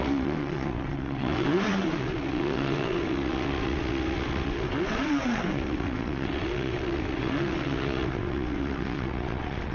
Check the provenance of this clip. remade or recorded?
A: remade